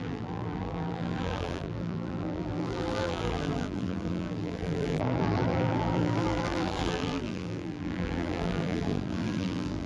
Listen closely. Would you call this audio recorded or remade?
remade